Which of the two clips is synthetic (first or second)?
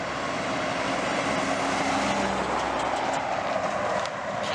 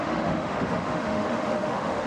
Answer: second